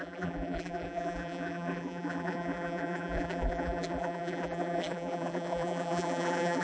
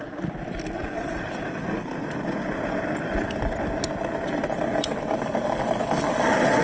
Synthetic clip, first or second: first